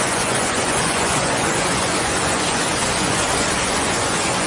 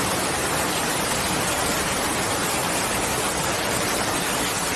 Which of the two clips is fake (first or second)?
first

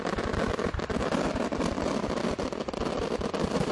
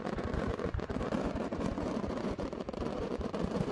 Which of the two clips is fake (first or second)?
second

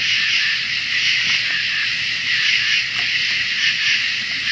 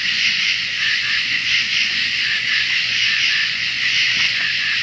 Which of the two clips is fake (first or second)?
second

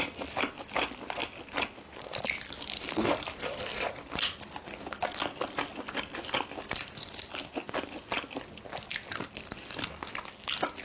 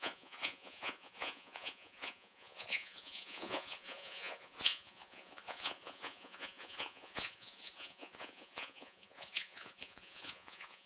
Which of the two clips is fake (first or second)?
second